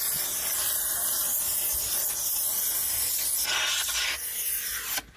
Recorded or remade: recorded